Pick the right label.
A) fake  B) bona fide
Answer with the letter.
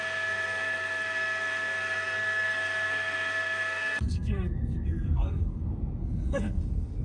A